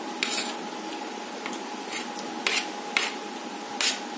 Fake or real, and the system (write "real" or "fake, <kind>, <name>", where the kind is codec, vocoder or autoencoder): real